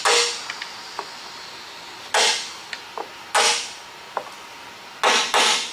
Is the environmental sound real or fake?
real